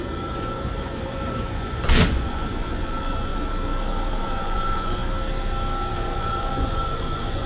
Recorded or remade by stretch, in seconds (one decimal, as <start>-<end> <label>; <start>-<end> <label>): 0.0-3.3 remade; 3.3-4.2 recorded; 4.2-5.0 remade; 5.0-5.9 recorded; 5.9-7.5 remade